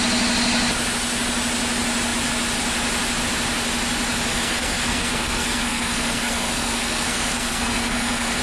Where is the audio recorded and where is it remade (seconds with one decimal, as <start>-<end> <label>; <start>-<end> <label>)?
0.0-4.3 recorded; 4.3-8.4 remade